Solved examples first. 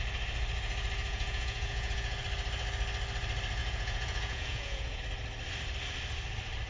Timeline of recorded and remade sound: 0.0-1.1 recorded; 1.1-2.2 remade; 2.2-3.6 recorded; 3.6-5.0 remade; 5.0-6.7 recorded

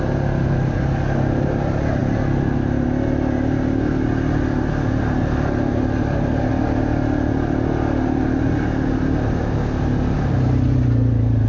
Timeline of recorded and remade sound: 0.0-11.5 recorded